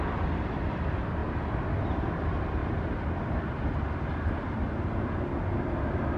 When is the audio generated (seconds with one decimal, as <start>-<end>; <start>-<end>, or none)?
2.6-3.6